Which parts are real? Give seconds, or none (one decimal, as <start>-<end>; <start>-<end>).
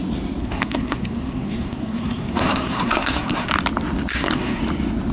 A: 0.0-0.4; 3.5-4.1; 4.6-5.1